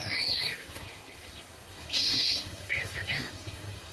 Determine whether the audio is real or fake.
fake